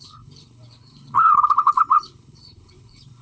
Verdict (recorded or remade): remade